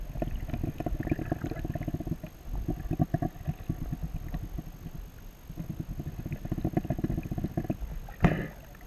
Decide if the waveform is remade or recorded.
recorded